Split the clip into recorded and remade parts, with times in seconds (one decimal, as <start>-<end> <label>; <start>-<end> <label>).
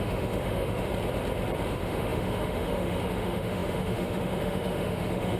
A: 0.0-0.9 remade; 0.9-1.7 recorded; 1.7-5.4 remade